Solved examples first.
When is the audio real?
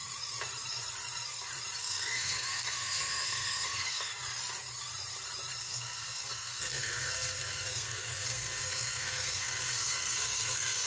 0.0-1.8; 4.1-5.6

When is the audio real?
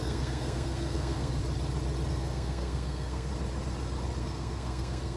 1.4-2.1; 3.3-4.2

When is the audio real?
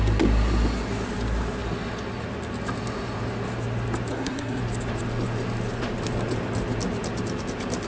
0.0-4.1; 4.6-7.9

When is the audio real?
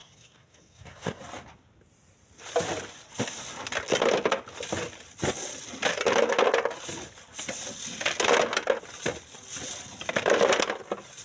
1.2-11.2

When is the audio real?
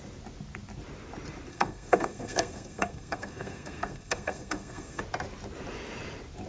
0.0-1.5; 5.0-6.5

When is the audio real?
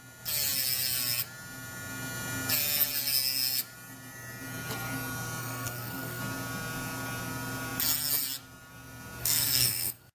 0.0-5.4; 6.2-9.2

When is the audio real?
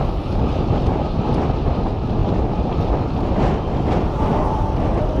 0.0-5.2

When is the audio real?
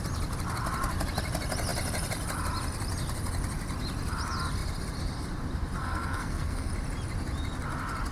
0.0-5.8; 6.7-8.1